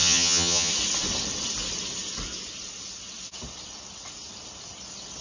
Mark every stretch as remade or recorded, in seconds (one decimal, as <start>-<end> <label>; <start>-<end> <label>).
0.0-0.7 remade; 0.7-5.2 recorded